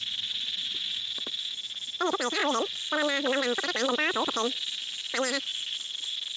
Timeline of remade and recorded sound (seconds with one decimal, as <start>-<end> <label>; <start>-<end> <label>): 0.0-6.4 recorded